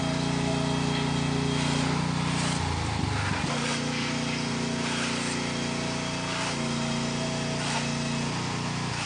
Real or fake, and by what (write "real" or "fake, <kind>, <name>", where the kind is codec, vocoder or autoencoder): real